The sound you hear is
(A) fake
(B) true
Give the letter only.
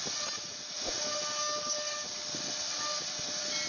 B